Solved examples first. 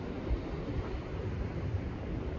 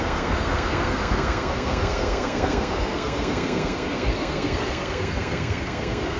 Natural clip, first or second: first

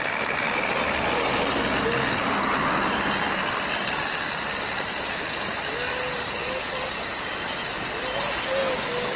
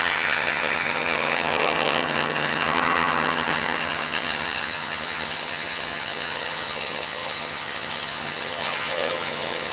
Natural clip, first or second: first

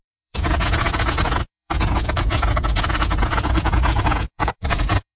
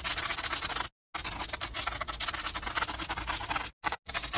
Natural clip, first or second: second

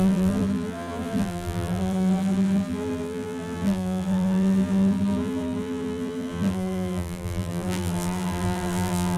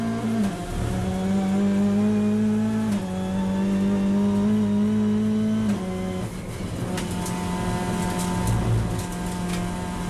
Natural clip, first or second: second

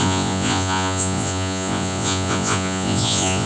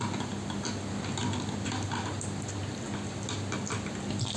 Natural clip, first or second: second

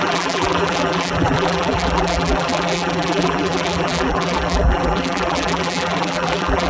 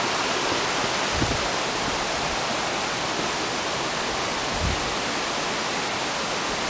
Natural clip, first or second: second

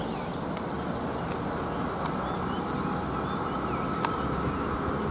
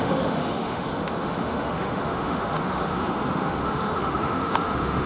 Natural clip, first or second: first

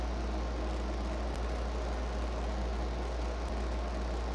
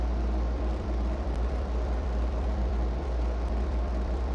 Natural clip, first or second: first